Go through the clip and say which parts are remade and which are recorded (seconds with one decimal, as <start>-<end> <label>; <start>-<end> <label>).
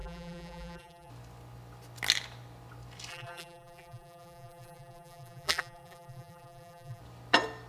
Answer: 0.0-1.1 remade; 1.1-3.1 recorded; 3.1-7.0 remade; 7.0-7.7 recorded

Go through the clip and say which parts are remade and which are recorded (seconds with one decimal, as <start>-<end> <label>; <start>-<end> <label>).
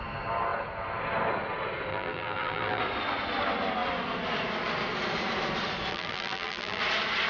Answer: 0.0-1.9 recorded; 1.9-2.8 remade; 2.8-5.9 recorded; 5.9-6.8 remade; 6.8-7.3 recorded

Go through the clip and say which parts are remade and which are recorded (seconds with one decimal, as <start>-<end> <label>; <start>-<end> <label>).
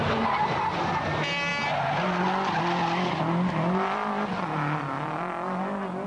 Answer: 0.0-6.1 recorded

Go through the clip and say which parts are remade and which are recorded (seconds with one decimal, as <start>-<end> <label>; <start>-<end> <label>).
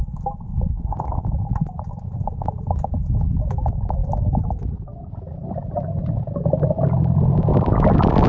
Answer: 0.0-7.5 recorded; 7.5-8.3 remade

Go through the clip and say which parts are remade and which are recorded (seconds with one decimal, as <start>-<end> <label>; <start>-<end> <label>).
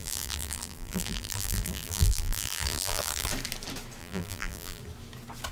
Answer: 0.0-3.3 remade; 3.3-4.0 recorded; 4.0-4.8 remade; 4.8-5.5 recorded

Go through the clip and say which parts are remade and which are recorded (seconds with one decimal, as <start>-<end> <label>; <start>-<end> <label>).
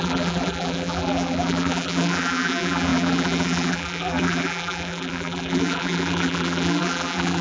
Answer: 0.0-7.4 remade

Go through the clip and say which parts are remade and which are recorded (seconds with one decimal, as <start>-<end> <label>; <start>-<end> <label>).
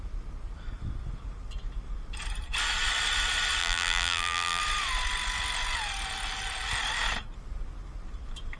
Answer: 0.0-3.6 recorded; 3.6-4.6 remade; 4.6-8.6 recorded